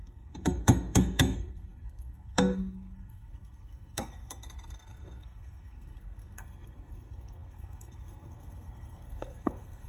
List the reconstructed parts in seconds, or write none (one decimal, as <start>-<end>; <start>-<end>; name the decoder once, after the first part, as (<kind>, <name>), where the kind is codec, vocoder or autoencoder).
0.0-9.9 (codec, SNAC)